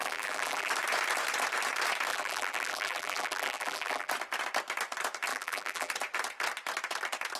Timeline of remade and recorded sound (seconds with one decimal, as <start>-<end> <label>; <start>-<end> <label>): 0.0-0.7 remade; 0.7-2.1 recorded; 2.1-4.1 remade; 4.1-5.3 recorded; 5.3-5.9 remade; 5.9-7.4 recorded